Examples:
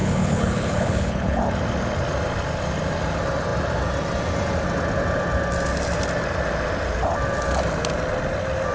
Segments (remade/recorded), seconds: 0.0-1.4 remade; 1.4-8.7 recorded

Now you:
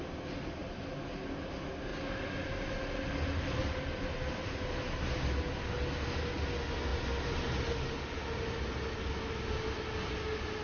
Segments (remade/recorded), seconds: 0.0-10.6 recorded

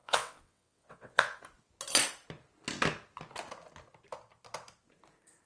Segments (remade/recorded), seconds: 0.0-1.4 remade; 1.4-5.5 recorded

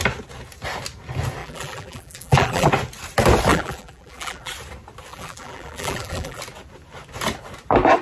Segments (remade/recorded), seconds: 0.0-1.4 recorded; 1.4-2.7 remade; 2.7-3.5 recorded; 3.5-4.5 remade; 4.5-5.1 recorded; 5.1-6.4 remade; 6.4-8.0 recorded

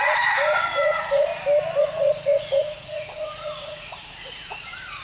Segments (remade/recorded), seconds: 0.0-1.3 remade; 1.3-1.8 recorded; 1.8-5.0 remade

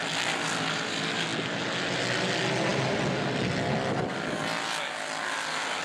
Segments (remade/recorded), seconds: 0.0-5.8 recorded

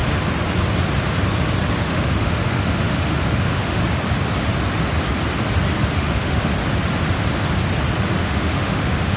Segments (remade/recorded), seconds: 0.0-1.7 recorded; 1.7-3.8 remade; 3.8-5.9 recorded; 5.9-6.5 remade; 6.5-8.2 recorded; 8.2-9.2 remade